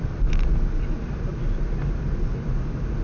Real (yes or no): yes